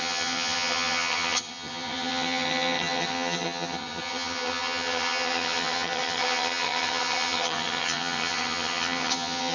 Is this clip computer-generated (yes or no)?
yes